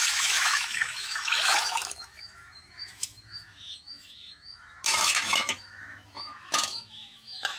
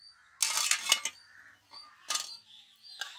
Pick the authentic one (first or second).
second